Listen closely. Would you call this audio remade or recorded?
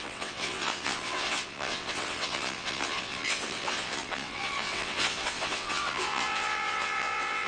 remade